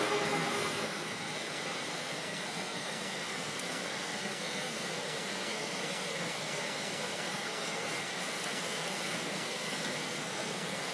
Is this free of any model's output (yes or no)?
no